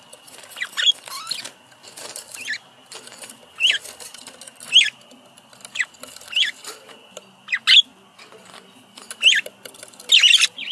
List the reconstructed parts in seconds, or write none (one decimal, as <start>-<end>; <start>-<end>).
1.8-4.4